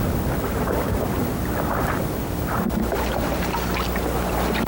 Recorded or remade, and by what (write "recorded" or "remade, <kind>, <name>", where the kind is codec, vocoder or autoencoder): recorded